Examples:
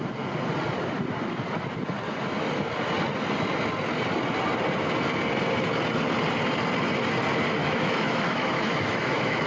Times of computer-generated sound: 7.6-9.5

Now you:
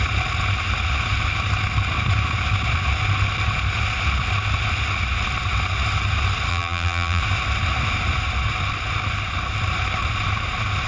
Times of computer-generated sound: 6.5-7.2

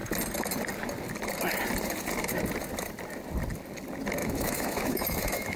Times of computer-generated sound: 4.2-5.6

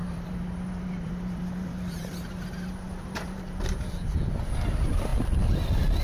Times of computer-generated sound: 0.0-3.6

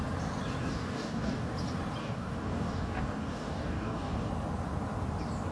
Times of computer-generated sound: 0.6-1.5; 2.0-4.3

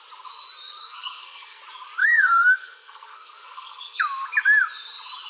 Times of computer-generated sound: 0.8-1.6; 2.0-4.0

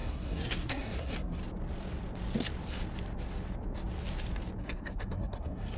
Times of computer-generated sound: 0.0-1.4; 4.6-5.8